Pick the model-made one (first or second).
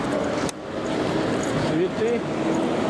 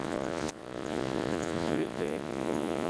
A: second